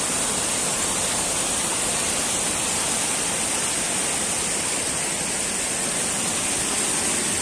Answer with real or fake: real